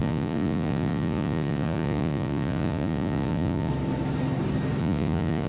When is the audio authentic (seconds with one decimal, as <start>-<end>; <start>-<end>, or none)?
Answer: 3.7-4.8